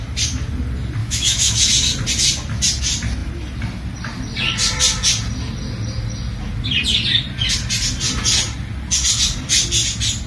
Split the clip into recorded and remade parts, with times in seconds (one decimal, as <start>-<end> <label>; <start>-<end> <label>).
0.0-1.0 recorded; 1.0-1.7 remade; 1.7-10.3 recorded